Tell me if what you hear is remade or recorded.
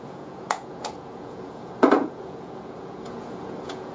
remade